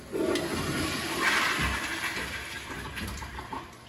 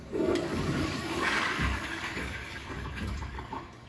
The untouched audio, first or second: first